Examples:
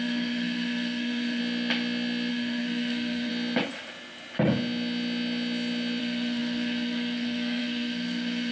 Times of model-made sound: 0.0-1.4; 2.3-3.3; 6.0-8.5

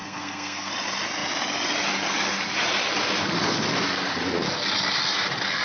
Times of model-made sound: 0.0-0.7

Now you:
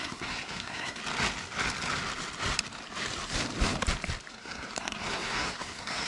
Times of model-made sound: 0.0-1.0; 4.3-6.1

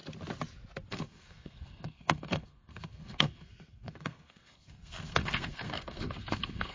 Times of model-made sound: 0.9-6.7

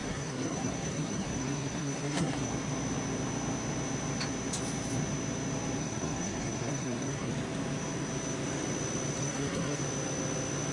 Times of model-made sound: 0.0-2.5; 5.8-7.3; 9.2-9.8

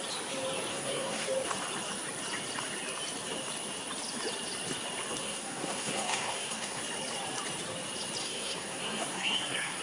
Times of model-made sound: 0.7-1.3; 5.2-6.8; 8.2-9.8

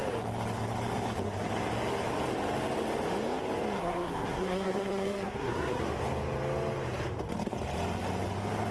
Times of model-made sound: 3.8-5.8

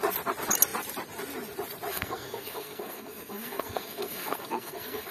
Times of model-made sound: 1.9-5.1